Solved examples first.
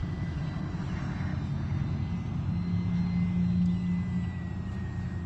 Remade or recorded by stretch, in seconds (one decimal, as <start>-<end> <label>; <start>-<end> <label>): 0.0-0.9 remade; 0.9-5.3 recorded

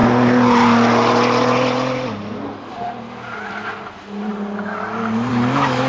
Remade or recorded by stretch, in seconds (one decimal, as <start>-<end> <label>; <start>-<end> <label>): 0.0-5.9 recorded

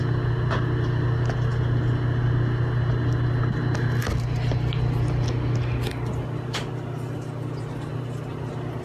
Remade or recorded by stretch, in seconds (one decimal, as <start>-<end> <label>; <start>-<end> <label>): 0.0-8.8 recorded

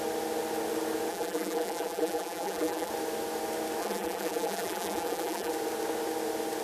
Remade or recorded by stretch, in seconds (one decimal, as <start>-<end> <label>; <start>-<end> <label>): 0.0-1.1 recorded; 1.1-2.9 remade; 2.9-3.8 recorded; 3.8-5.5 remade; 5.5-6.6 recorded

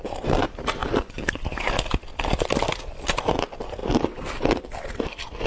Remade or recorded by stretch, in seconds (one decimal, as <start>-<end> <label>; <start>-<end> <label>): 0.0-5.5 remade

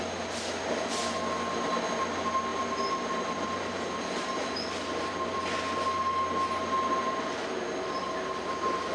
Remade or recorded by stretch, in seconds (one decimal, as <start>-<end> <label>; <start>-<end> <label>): 0.0-2.5 recorded; 2.5-5.4 remade; 5.4-8.9 recorded

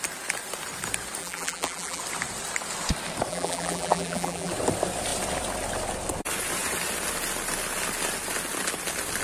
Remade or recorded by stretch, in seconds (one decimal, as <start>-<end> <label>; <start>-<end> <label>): 0.0-1.2 recorded; 1.2-2.0 remade; 2.0-3.3 recorded; 3.3-4.5 remade; 4.5-9.2 recorded

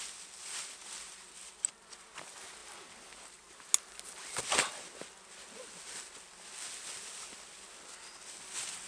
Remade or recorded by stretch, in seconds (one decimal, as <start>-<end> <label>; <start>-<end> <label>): 0.0-8.9 recorded